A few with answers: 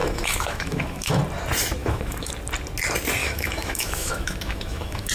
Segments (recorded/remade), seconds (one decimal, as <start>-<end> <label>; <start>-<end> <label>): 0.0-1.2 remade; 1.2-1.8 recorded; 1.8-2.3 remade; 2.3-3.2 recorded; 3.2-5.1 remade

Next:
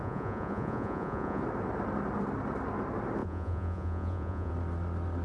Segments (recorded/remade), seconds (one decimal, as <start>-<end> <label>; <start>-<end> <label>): 0.0-1.4 remade; 1.4-3.2 recorded; 3.2-4.5 remade; 4.5-5.2 recorded

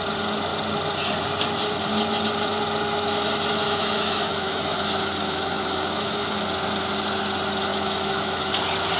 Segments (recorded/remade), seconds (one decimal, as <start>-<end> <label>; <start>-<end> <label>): 0.0-3.5 recorded; 3.5-6.4 remade; 6.4-7.7 recorded; 7.7-8.5 remade; 8.5-9.0 recorded

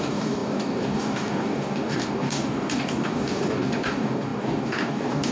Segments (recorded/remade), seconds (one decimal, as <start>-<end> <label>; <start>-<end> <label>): 0.0-5.3 remade